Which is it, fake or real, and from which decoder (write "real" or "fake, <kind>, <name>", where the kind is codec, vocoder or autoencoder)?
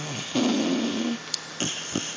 real